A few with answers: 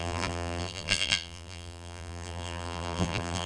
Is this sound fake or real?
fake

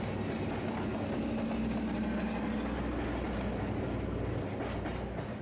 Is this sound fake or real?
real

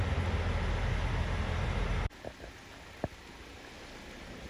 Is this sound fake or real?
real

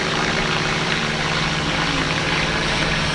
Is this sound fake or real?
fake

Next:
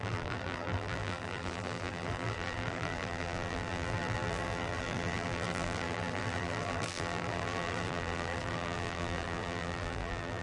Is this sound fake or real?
fake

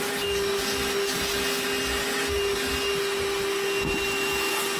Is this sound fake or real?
real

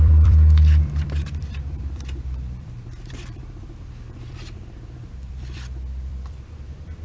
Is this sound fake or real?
fake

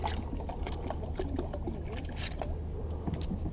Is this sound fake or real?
real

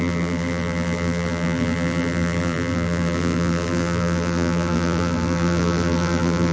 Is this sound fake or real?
fake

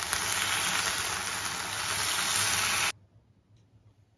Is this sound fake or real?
real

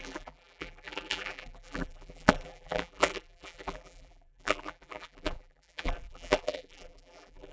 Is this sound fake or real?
fake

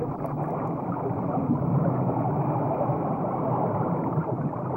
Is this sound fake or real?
real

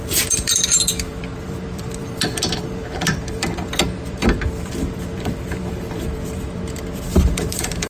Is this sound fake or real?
fake